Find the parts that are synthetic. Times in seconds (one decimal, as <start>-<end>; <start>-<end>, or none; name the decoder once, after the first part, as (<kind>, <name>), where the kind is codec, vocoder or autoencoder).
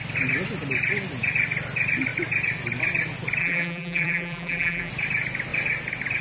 3.4-4.9 (vocoder, BigVGAN v2)